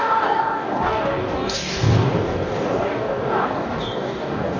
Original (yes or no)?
no